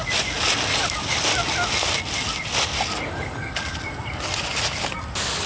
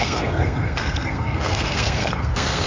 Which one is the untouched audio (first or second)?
first